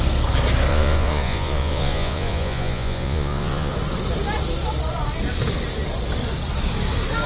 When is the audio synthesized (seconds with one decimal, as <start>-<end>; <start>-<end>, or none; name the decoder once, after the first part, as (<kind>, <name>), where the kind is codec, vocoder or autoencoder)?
0.7-3.7 (vocoder, Vocos)